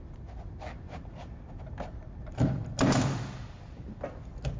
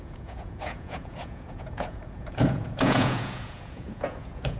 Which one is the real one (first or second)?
first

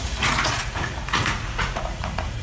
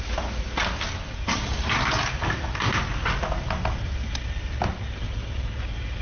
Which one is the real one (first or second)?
second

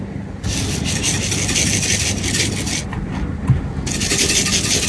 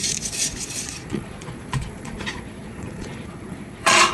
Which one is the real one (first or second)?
first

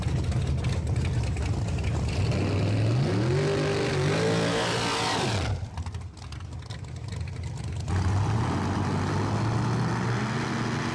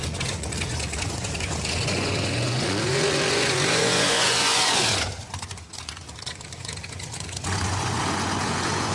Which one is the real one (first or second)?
first